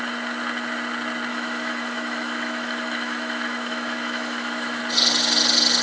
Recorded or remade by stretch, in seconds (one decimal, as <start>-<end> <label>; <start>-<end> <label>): 0.0-1.3 recorded; 1.3-4.8 remade; 4.8-5.8 recorded